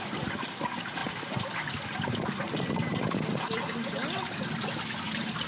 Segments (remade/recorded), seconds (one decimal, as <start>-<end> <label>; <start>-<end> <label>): 0.0-5.5 recorded